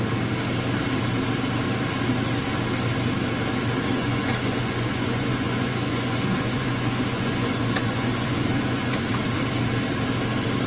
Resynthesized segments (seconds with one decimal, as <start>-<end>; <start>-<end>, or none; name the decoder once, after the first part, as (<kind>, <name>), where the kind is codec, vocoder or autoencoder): 4.0-9.1 (vocoder, Vocos)